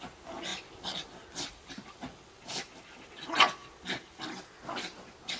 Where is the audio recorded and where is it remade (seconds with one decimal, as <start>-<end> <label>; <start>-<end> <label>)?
0.0-5.4 recorded